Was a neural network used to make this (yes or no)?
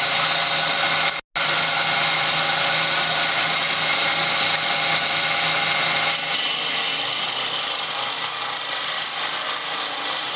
no